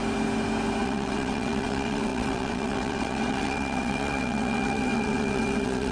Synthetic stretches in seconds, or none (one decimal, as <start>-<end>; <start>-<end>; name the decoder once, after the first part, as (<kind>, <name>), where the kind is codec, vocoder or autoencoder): 0.8-5.9 (vocoder, WaveNeXt)